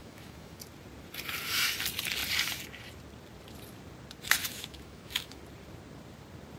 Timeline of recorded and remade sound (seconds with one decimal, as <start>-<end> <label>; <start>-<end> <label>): 0.0-0.6 remade; 0.6-4.4 recorded; 4.4-5.4 remade; 5.4-6.6 recorded